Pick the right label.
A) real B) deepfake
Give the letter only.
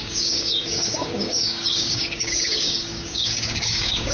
B